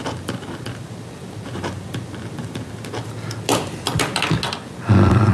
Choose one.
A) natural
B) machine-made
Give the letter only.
A